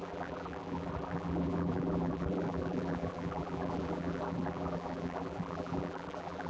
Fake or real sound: fake